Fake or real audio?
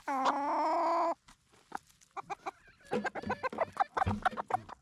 real